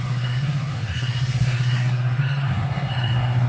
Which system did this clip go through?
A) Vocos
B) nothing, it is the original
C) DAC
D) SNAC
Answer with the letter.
D